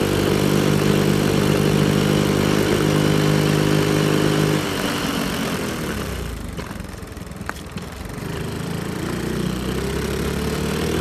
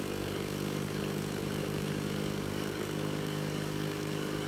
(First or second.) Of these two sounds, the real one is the first